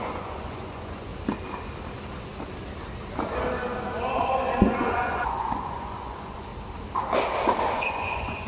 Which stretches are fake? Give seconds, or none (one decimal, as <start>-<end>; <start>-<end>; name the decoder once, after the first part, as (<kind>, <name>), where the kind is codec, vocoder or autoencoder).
0.0-1.1 (vocoder, Vocos); 4.3-6.5; 7.7-8.5